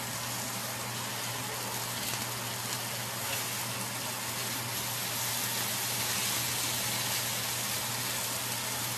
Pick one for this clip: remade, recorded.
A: recorded